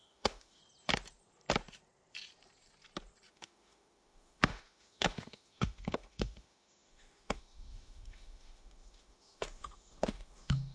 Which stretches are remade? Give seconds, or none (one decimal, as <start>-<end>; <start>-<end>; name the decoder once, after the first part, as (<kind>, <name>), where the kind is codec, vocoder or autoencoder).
0.0-0.6 (autoencoder, DAC-VAE); 3.3-10.7